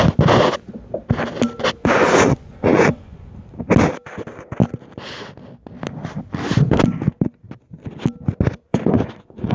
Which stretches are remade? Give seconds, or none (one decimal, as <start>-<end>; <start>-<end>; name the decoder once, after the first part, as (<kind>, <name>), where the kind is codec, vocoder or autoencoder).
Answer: 1.8-3.3 (vocoder, Vocos); 8.7-9.5